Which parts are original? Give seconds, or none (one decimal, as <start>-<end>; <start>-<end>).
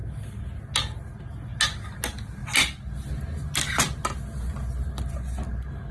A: 0.0-5.9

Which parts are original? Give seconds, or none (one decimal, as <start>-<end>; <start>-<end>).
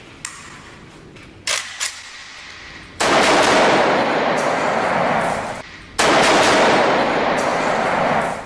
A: 0.0-2.2; 3.1-7.5; 8.0-8.5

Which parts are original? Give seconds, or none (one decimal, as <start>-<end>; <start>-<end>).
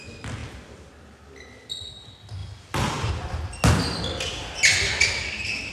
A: 0.0-0.4; 0.9-2.4; 3.1-5.7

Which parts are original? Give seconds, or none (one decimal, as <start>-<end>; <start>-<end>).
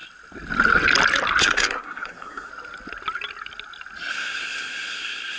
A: 0.0-1.4; 2.5-4.1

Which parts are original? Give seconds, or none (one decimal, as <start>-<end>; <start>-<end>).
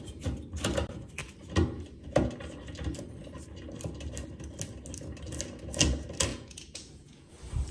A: 0.0-6.3; 7.3-7.7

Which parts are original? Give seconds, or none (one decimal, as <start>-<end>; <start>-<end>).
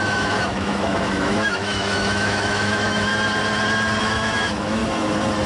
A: 3.1-4.0; 4.8-5.5